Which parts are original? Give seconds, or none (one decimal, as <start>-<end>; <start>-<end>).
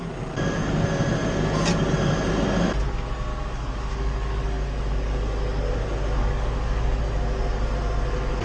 0.0-3.3; 5.6-6.2; 7.0-8.4